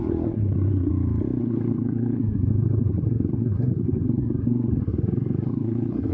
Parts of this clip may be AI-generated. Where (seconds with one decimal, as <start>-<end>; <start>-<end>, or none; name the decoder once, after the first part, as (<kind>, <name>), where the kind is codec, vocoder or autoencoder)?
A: 0.0-0.9 (codec, SNAC); 1.4-6.1